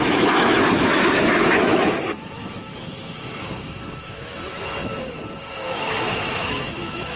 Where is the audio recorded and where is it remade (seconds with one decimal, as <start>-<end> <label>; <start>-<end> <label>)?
0.0-4.8 remade; 4.8-5.4 recorded; 5.4-7.2 remade